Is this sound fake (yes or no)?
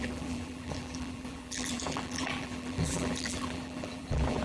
yes